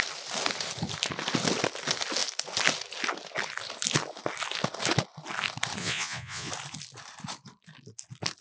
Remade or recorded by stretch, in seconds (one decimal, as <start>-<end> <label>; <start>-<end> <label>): 0.0-5.8 recorded; 5.8-6.5 remade; 6.5-8.4 recorded